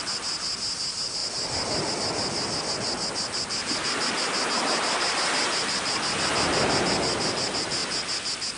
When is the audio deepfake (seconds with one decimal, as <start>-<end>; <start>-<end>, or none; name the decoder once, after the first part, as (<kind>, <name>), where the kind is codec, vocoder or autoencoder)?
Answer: none